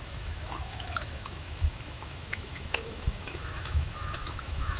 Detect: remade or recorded remade